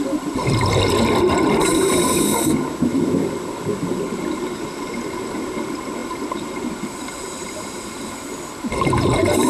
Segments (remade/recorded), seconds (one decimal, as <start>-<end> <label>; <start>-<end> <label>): 0.0-9.5 recorded